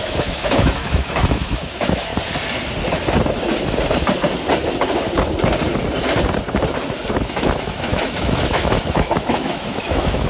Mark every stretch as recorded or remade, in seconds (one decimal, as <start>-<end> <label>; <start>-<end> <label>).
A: 0.0-2.1 remade; 2.1-7.1 recorded; 7.1-10.3 remade